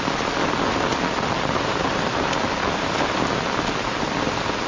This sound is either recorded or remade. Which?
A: recorded